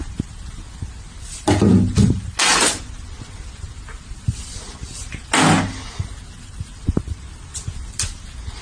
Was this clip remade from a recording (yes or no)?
no